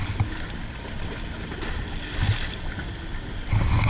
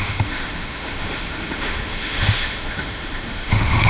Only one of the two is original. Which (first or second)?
first